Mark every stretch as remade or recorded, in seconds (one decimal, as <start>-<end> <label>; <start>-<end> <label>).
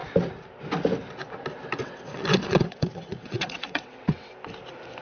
0.0-1.8 recorded; 1.8-4.3 remade; 4.3-5.0 recorded